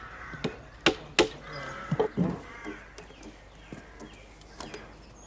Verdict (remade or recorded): recorded